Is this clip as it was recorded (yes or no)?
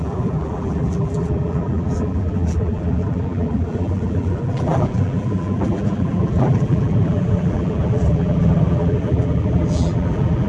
no